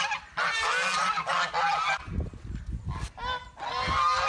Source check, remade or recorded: recorded